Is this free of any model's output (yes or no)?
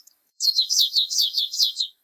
no